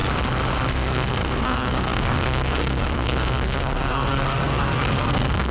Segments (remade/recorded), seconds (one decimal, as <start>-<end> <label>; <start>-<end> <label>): 0.0-0.7 recorded; 0.7-5.5 remade